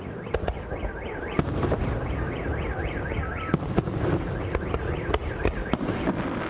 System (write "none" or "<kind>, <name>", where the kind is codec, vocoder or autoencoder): none